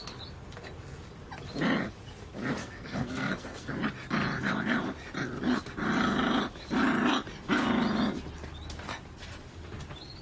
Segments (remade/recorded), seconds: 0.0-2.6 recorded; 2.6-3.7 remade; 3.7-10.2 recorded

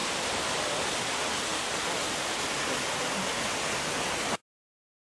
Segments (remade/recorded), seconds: 0.0-5.0 recorded

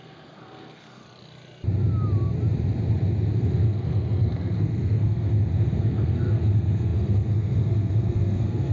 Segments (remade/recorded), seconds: 0.0-1.0 remade; 1.0-3.3 recorded; 3.3-5.3 remade; 5.3-5.8 recorded; 5.8-8.7 remade

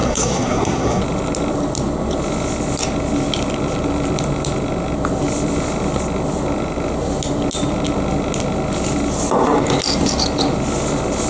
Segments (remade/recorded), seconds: 0.0-1.0 remade; 1.0-11.3 recorded

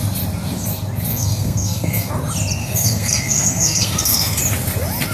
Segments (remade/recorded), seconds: 0.0-1.1 recorded; 1.1-2.1 remade; 2.1-2.6 recorded; 2.6-4.4 remade; 4.4-5.1 recorded